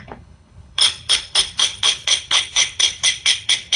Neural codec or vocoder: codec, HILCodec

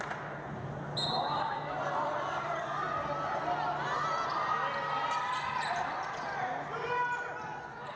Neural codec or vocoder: none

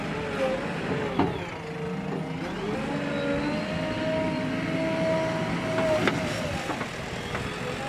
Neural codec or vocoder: none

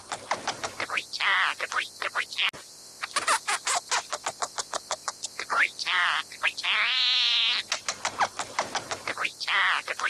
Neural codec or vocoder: none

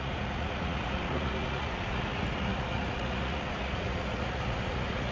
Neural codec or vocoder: vocoder, Vocos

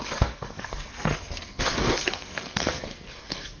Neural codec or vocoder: codec, SNAC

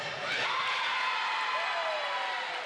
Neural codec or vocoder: none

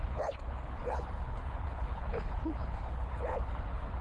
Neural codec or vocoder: codec, HILCodec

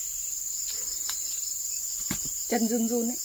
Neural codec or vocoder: none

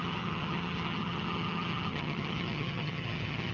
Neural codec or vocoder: vocoder, HiFi-GAN